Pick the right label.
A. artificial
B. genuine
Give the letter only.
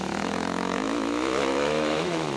A